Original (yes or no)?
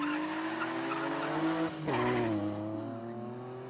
yes